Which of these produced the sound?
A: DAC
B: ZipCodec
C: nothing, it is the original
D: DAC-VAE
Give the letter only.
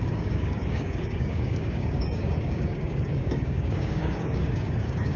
A